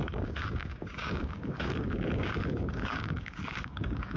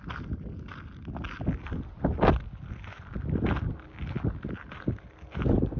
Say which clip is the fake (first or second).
first